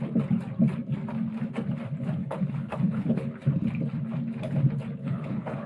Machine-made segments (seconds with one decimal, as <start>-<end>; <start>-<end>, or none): 2.2-3.3; 5.0-5.7